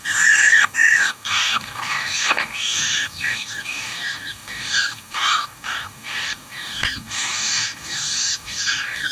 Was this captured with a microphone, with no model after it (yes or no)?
no